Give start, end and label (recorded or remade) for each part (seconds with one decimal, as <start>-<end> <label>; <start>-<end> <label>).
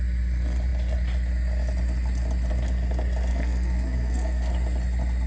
0.0-3.3 recorded; 3.3-4.5 remade; 4.5-5.3 recorded